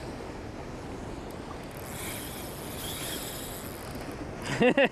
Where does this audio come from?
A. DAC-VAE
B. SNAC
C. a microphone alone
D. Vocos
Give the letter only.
C